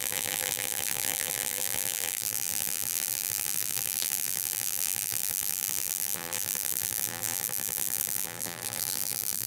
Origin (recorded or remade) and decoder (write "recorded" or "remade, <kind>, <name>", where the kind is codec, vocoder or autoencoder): remade, vocoder, BigVGAN v2